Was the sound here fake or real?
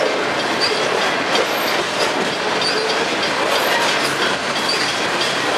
real